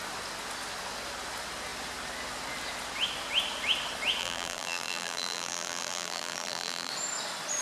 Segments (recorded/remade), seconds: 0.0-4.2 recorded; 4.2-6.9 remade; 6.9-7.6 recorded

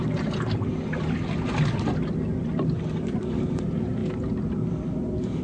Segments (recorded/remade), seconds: 0.0-5.4 recorded

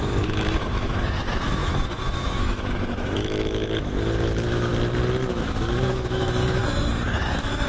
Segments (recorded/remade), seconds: 0.0-4.7 remade; 4.7-5.3 recorded; 5.3-6.6 remade; 6.6-7.3 recorded; 7.3-7.7 remade

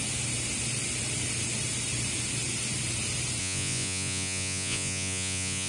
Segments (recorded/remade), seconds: 0.0-3.4 recorded; 3.4-5.7 remade